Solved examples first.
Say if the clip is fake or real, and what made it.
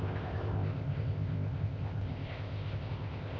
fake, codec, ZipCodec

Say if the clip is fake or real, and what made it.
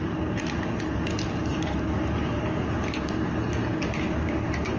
real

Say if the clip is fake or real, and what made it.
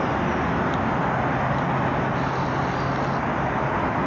real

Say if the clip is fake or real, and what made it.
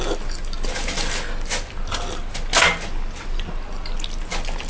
real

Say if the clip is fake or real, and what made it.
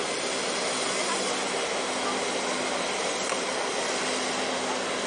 real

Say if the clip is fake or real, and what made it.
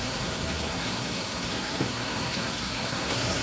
fake, codec, SNAC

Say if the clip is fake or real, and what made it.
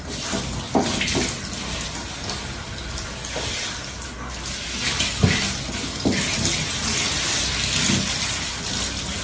real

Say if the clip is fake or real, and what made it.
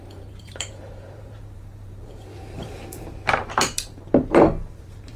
fake, vocoder, BigVGAN v2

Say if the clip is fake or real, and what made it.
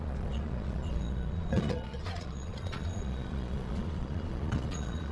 fake, vocoder, Vocos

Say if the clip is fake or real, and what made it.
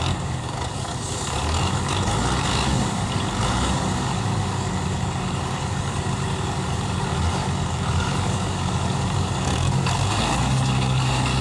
fake, codec, DAC